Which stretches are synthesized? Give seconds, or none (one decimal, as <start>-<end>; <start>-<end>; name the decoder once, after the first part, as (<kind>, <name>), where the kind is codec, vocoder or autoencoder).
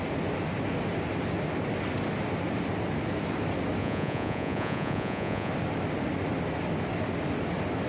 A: 3.8-5.5 (vocoder, Vocos)